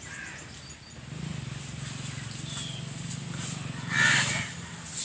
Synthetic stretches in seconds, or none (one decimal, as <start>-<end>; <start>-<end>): 1.3-4.3